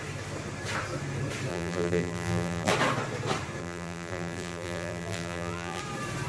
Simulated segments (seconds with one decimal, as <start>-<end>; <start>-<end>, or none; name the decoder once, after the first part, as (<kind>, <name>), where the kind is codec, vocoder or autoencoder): 1.5-2.7 (vocoder, BigVGAN v2); 3.6-5.8

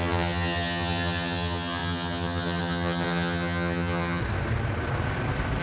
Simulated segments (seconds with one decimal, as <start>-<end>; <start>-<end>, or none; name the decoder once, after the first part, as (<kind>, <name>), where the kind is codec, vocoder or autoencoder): 0.0-4.2 (vocoder, HiFi-GAN)

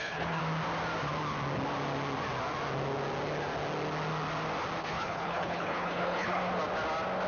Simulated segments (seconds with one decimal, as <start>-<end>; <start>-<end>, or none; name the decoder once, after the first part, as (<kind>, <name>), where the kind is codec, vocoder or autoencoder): 0.0-0.4 (codec, HILCodec); 4.8-6.4

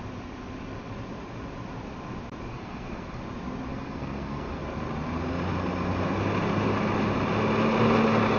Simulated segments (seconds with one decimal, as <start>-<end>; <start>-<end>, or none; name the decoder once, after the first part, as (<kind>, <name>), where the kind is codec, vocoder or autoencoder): 2.5-3.2 (codec, SNAC); 3.7-4.6

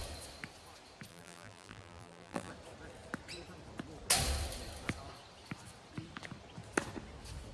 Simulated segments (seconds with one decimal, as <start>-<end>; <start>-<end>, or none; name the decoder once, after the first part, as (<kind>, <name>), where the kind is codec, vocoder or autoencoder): 1.1-2.5 (vocoder, BigVGAN v2)

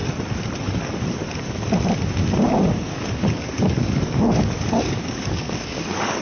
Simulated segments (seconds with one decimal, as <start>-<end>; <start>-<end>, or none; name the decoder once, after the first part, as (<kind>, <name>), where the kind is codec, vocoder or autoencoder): 0.6-1.2 (codec, DAC); 2.7-6.2

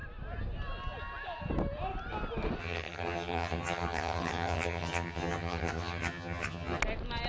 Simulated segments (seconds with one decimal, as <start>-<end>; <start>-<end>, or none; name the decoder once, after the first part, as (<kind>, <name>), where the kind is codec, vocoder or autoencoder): 2.6-6.8 (vocoder, HiFi-GAN)